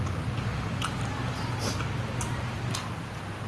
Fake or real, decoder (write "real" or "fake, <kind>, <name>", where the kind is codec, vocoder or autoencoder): real